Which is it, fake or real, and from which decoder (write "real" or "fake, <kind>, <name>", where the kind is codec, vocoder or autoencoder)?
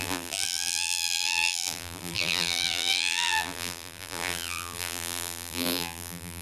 fake, vocoder, BigVGAN v2